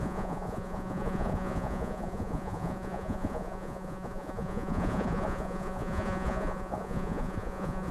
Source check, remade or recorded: remade